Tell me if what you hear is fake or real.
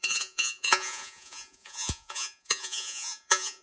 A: fake